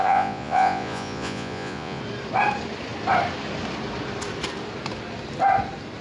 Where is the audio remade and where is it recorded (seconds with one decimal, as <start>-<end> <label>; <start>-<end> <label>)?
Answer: 0.0-2.0 remade; 2.0-6.0 recorded